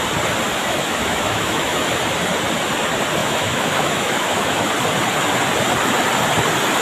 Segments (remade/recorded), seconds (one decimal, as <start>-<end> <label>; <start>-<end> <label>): 0.0-0.6 recorded; 0.6-2.0 remade; 2.0-3.2 recorded; 3.2-4.7 remade; 4.7-6.8 recorded